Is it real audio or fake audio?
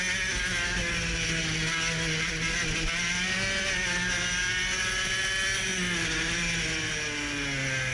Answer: real